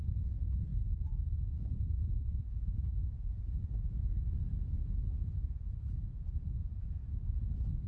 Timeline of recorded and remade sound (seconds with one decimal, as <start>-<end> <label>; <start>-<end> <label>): 0.0-0.7 remade; 0.7-1.3 recorded; 1.3-7.9 remade